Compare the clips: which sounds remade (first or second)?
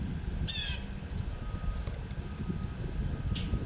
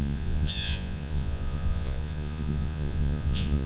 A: second